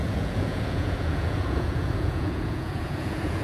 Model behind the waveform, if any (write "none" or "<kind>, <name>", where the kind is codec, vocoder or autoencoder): vocoder, Vocos